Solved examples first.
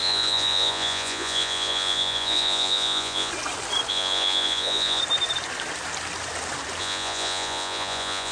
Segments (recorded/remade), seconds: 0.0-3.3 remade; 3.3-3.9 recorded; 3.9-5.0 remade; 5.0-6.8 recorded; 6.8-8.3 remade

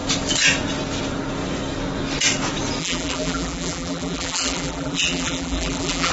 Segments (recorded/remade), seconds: 0.0-2.8 recorded; 2.8-6.1 remade

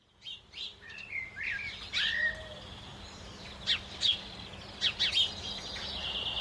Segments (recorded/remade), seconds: 0.0-1.9 remade; 1.9-2.4 recorded; 2.4-2.9 remade; 2.9-6.4 recorded

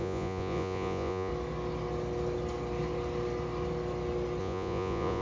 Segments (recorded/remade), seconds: 0.0-1.3 remade; 1.3-4.4 recorded; 4.4-5.2 remade

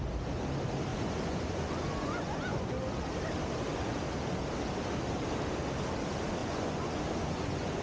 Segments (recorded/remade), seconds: 0.0-0.9 recorded; 0.9-2.6 remade; 2.6-6.4 recorded; 6.4-7.8 remade

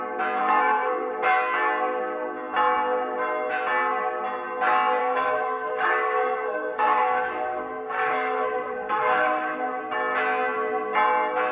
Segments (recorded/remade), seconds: 0.0-0.4 recorded; 0.4-1.1 remade; 1.1-5.0 recorded; 5.0-9.8 remade; 9.8-11.5 recorded

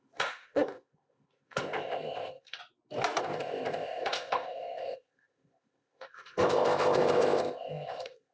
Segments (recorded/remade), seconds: 0.0-2.6 remade; 2.6-3.2 recorded; 3.2-8.3 remade

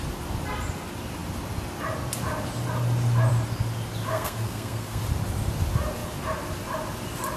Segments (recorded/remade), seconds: 0.0-4.1 recorded; 4.1-5.0 remade; 5.0-7.4 recorded